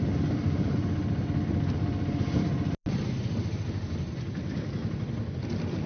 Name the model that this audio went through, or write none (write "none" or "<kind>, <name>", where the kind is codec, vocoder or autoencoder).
none